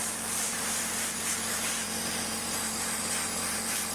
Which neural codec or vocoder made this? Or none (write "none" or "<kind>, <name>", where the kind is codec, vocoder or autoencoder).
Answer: vocoder, BigVGAN v2